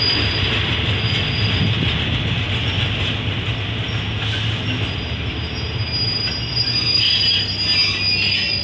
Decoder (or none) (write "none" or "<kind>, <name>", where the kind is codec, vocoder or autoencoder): none